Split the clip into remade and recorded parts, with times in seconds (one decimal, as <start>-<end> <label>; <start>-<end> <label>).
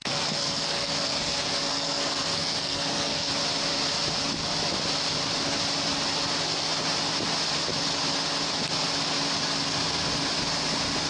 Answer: 0.0-3.3 remade; 3.3-11.1 recorded